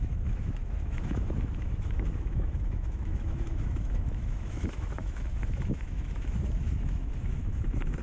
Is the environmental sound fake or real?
fake